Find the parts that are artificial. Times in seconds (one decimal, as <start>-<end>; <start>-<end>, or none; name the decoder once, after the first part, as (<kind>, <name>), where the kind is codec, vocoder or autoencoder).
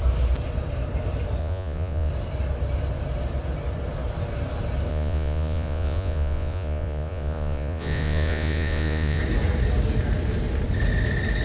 1.4-2.1 (vocoder, Vocos); 4.9-9.2